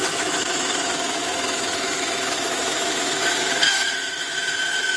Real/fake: fake